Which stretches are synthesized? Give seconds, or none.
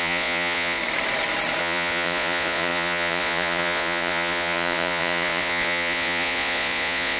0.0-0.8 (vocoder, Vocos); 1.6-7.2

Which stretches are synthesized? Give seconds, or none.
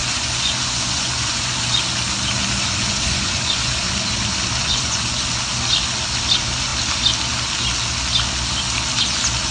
0.0-1.5 (vocoder, Vocos); 2.6-3.7; 4.6-5.2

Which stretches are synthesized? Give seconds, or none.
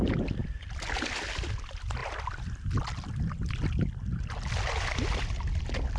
none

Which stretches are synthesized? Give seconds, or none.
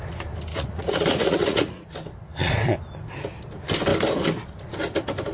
0.5-1.9 (vocoder, Vocos)